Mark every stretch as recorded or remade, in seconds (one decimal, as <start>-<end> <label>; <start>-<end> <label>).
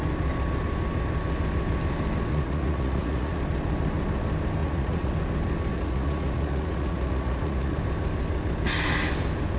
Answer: 0.0-2.3 recorded; 2.3-3.4 remade; 3.4-4.6 recorded; 4.6-5.1 remade; 5.1-5.7 recorded; 5.7-7.8 remade; 7.8-9.6 recorded